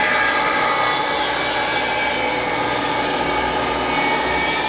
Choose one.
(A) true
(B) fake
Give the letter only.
A